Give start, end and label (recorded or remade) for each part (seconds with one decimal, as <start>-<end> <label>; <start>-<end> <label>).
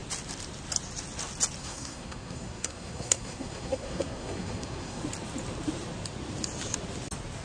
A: 0.0-1.6 recorded; 1.6-5.0 remade; 5.0-7.4 recorded